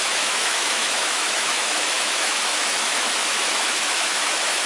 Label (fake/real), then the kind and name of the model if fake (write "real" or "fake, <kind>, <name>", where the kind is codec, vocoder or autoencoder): fake, autoencoder, DAC-VAE